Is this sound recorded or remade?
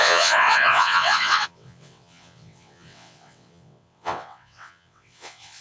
remade